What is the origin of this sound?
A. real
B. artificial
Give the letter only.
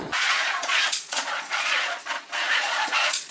B